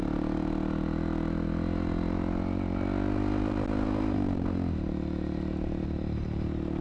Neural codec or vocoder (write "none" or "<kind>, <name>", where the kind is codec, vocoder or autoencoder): none